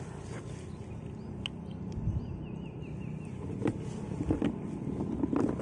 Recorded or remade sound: recorded